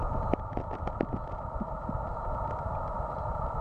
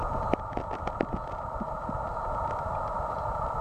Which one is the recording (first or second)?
second